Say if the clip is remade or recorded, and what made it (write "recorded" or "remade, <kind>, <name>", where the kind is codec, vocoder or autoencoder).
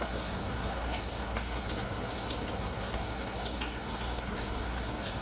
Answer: remade, codec, SNAC